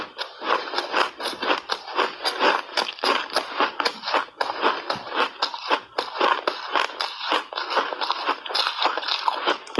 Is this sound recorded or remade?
recorded